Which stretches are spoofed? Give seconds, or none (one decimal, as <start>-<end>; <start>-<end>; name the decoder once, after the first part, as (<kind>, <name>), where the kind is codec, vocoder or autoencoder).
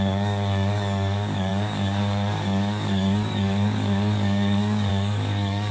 0.0-5.7 (codec, DAC)